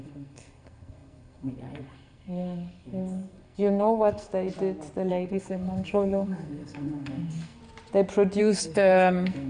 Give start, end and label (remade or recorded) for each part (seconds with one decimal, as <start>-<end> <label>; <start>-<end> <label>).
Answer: 0.0-4.3 remade; 4.3-5.1 recorded; 5.1-7.6 remade; 7.6-8.4 recorded; 8.4-9.5 remade